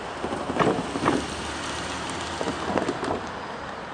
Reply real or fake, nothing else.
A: real